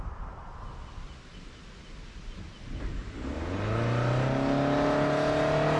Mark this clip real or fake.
real